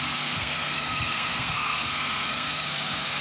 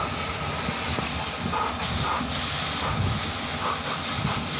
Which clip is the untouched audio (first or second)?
second